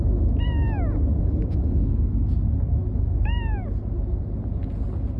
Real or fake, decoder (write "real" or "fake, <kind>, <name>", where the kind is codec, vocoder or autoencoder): real